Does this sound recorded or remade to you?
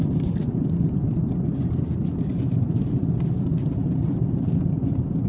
recorded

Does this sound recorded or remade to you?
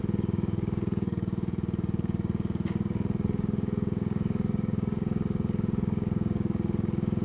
remade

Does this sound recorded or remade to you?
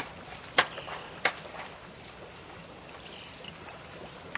recorded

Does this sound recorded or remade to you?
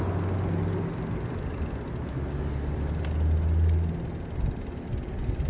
recorded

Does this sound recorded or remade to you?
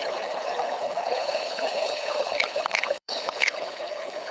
remade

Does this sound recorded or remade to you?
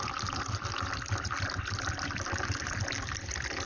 recorded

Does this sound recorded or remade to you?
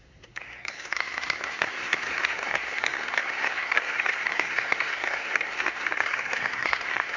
remade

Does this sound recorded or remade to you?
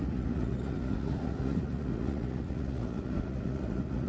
remade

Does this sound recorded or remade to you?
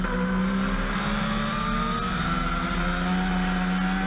recorded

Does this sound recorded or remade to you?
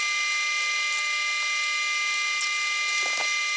recorded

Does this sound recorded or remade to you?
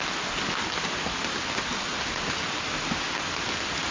recorded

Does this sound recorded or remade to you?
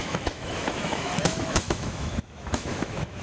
remade